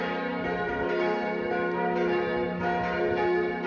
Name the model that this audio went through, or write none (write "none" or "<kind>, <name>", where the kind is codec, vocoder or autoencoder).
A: none